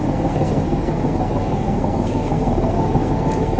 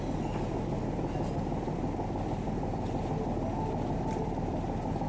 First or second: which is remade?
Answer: first